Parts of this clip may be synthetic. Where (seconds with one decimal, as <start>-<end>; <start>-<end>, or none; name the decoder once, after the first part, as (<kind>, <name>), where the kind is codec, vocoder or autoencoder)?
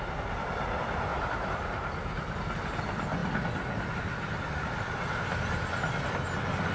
1.1-2.7 (vocoder, BigVGAN v2)